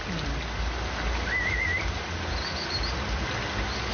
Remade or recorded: recorded